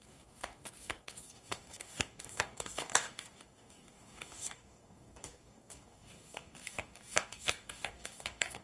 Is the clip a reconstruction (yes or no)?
yes